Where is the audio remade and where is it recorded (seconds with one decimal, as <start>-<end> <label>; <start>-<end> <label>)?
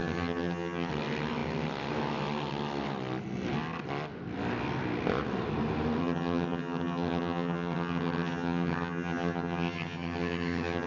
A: 0.0-0.9 remade; 0.9-6.0 recorded; 6.0-10.9 remade